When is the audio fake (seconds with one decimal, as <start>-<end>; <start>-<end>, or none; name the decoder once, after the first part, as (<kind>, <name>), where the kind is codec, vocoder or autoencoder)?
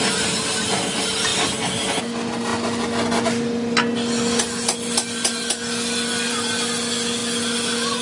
none